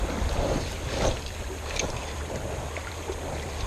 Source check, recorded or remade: recorded